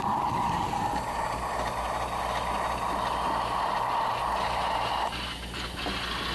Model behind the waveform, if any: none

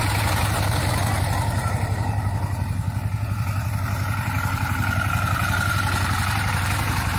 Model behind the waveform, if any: vocoder, BigVGAN v2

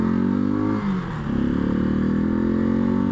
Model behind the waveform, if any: none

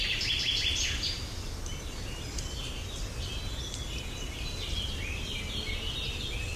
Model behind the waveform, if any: none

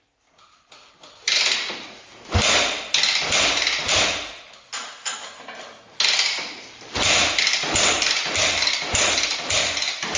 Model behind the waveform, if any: none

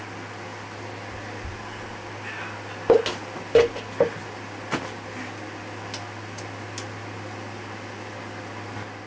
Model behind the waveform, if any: none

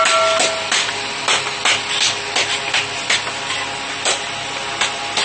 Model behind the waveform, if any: none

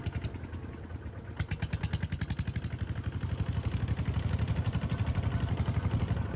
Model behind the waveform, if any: none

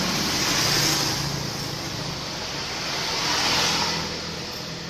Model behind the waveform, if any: none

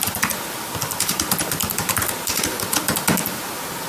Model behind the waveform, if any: none